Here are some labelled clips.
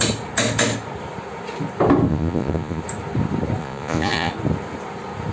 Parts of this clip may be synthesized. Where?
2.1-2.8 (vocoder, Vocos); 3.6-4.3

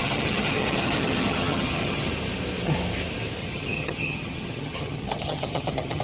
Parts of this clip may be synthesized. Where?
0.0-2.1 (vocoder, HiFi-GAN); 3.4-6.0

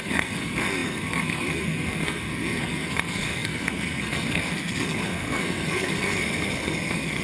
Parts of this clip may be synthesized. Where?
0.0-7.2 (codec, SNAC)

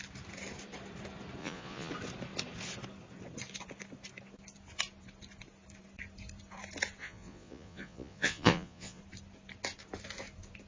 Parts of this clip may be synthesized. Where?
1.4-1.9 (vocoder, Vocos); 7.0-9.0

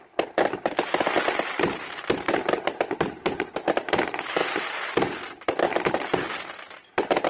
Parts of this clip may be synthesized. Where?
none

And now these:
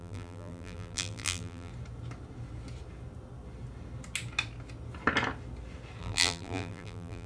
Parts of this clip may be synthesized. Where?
0.0-1.7 (vocoder, BigVGAN v2); 6.0-7.3